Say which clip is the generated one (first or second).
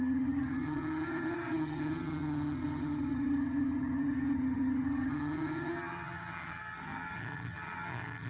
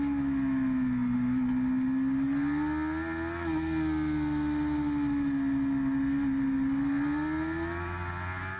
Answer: first